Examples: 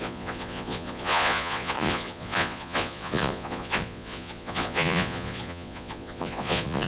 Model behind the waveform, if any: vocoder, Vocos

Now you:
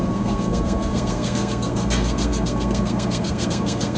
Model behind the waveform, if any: codec, SNAC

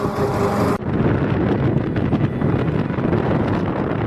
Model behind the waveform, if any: none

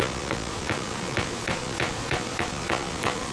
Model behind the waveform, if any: vocoder, Vocos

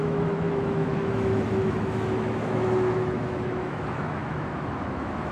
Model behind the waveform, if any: autoencoder, DAC-VAE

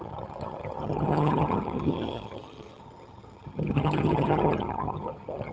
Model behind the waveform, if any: vocoder, HiFi-GAN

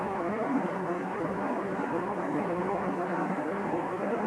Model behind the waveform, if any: codec, SNAC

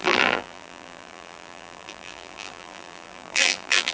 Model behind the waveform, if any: vocoder, BigVGAN v2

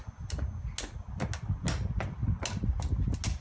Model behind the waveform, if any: none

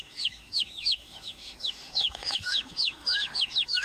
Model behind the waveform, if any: autoencoder, DAC-VAE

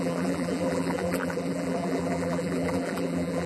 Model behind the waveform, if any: vocoder, BigVGAN v2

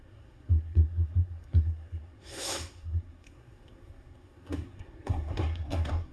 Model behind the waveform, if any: codec, SNAC